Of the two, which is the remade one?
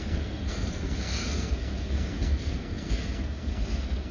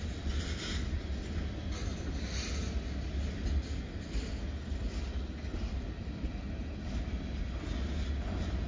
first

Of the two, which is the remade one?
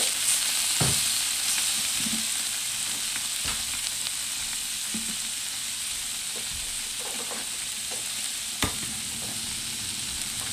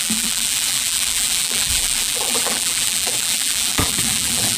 second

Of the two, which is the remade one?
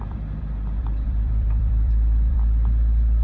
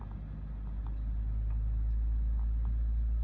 first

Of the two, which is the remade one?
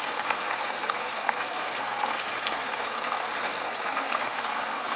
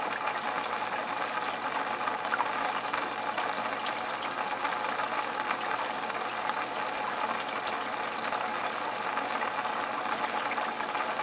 first